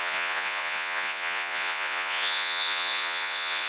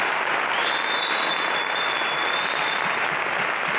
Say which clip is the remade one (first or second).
first